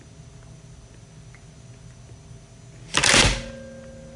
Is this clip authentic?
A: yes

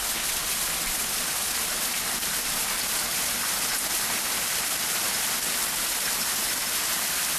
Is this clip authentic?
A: yes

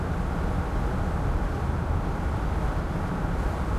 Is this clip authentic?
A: yes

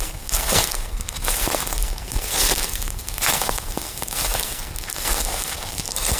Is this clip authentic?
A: no